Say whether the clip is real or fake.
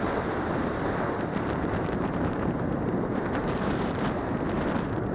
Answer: fake